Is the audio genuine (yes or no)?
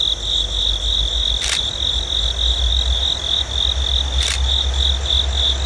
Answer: yes